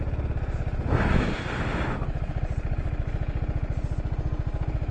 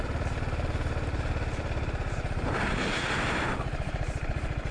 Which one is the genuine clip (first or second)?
first